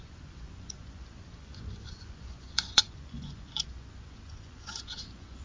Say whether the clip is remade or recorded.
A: remade